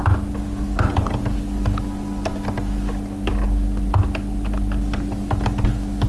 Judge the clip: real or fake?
real